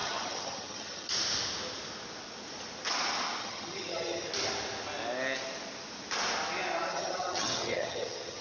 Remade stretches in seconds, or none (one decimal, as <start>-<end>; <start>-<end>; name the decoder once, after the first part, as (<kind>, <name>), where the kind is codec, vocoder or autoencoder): 0.0-1.1 (vocoder, HiFi-GAN); 3.4-4.3; 6.9-8.4